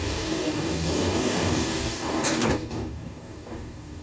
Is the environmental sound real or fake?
fake